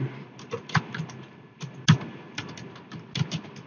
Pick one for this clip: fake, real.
real